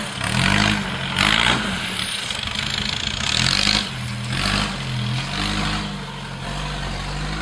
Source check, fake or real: real